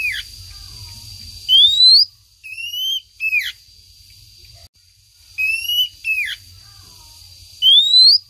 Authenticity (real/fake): real